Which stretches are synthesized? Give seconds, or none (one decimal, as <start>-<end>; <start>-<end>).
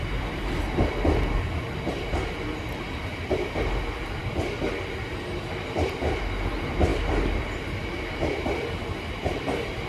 none